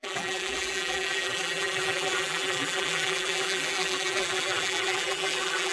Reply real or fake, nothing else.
fake